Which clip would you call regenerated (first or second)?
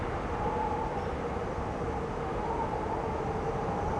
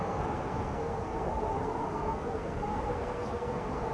second